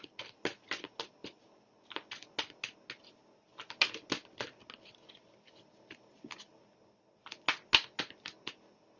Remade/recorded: recorded